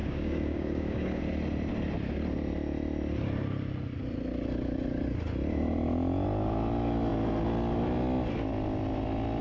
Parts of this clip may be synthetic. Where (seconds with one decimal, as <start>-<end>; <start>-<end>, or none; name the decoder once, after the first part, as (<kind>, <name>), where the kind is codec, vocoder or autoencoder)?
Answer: 0.0-1.2 (codec, DAC)